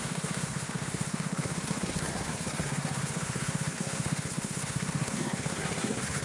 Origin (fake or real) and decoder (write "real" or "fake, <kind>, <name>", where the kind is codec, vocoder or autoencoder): fake, codec, SNAC